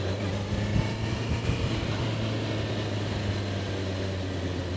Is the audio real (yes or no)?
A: yes